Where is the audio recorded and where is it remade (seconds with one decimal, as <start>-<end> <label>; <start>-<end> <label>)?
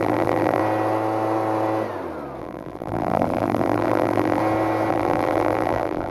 0.0-0.6 remade; 0.6-2.4 recorded; 2.4-4.4 remade; 4.4-4.9 recorded; 4.9-6.1 remade